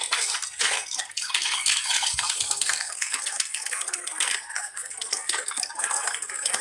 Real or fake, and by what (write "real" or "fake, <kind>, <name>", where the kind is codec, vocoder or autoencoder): fake, codec, SNAC